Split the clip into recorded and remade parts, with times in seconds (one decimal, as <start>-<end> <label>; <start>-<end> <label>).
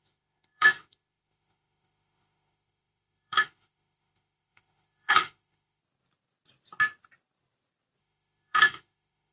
0.0-5.8 remade; 5.8-8.0 recorded; 8.0-9.3 remade